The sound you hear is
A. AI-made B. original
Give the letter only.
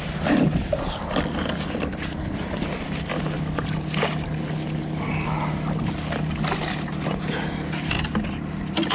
B